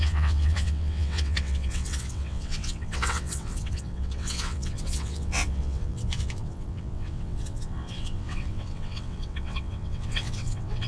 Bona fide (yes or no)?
no